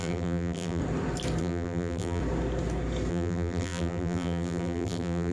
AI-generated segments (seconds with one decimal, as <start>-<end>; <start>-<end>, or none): 0.0-0.8; 1.4-2.2; 3.1-5.3